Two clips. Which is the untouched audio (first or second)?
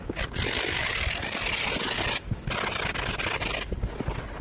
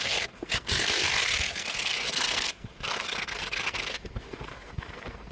first